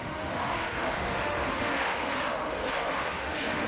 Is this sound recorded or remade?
remade